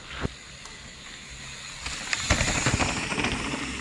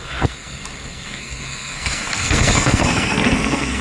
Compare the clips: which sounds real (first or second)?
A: first